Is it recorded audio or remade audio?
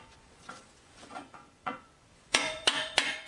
remade